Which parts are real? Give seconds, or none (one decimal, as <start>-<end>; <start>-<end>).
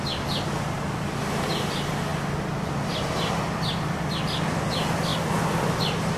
0.0-6.2